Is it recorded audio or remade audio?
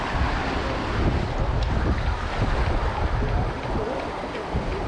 recorded